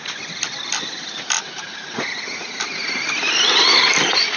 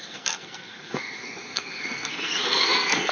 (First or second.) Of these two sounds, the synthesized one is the second